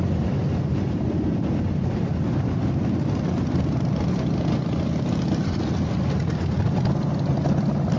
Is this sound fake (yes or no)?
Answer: no